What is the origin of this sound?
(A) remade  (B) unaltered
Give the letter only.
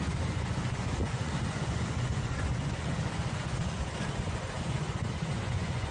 A